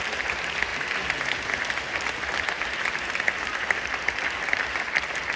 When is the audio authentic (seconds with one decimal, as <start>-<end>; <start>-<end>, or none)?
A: 0.0-5.4